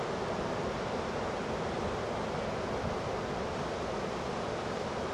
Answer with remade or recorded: recorded